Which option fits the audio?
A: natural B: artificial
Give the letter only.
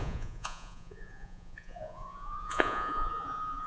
B